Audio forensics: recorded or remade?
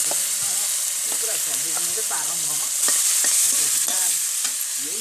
recorded